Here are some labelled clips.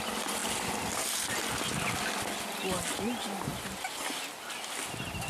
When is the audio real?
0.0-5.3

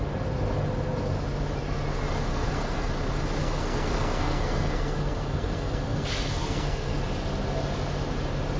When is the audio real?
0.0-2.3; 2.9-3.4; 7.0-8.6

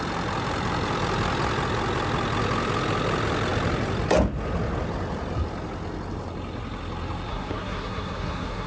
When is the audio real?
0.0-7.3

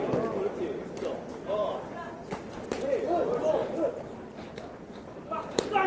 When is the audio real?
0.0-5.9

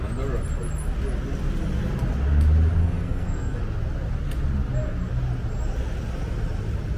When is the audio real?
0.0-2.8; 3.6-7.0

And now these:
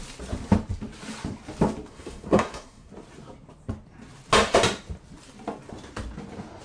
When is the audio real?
0.0-1.9; 2.9-6.6